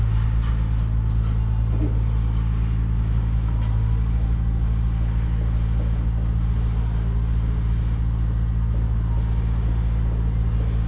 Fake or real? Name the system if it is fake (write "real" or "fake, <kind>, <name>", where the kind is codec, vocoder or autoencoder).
real